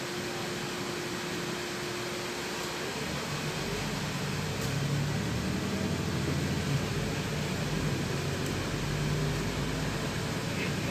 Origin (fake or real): real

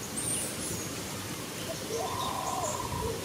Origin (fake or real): fake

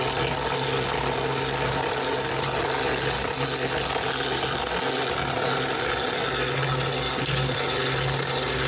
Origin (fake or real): real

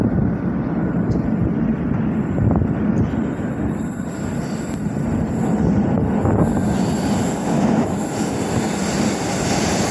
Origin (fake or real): real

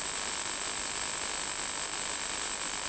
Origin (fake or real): fake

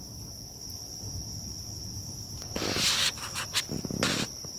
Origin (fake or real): real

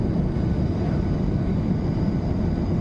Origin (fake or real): real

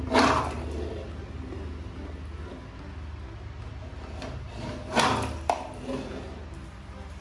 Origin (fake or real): real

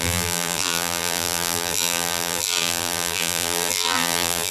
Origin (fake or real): fake